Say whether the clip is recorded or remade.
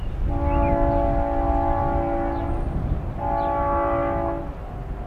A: recorded